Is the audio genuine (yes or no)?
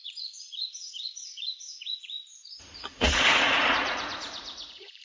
no